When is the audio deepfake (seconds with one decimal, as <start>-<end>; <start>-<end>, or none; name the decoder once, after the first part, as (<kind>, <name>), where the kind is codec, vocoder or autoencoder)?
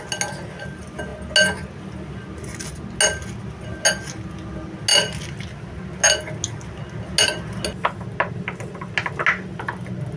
none